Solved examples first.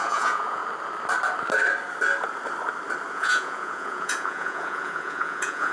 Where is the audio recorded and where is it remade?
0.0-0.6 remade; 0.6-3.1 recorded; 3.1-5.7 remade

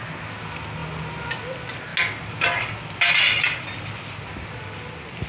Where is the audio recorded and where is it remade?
0.0-5.3 recorded

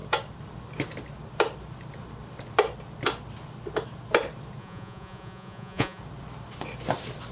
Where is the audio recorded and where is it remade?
0.0-4.6 recorded; 4.6-6.0 remade; 6.0-7.3 recorded

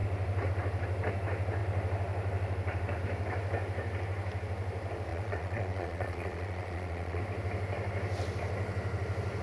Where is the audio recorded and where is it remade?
0.0-5.1 recorded; 5.1-7.2 remade; 7.2-9.4 recorded

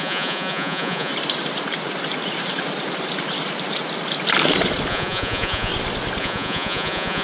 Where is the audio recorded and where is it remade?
0.0-1.1 remade; 1.1-4.9 recorded; 4.9-5.7 remade; 5.7-6.2 recorded; 6.2-7.2 remade

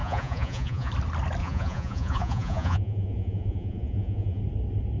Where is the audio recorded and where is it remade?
0.0-0.9 remade; 0.9-1.4 recorded; 1.4-4.4 remade; 4.4-5.0 recorded

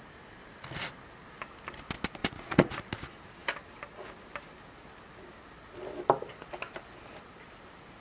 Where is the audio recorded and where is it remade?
0.0-2.2 recorded; 2.2-2.8 remade; 2.8-8.0 recorded